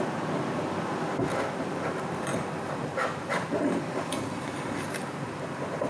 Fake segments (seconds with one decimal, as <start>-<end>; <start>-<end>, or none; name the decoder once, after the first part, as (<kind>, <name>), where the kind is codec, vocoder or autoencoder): none